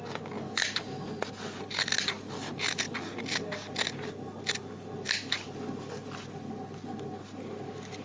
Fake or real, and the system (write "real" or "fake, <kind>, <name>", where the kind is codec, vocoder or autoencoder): real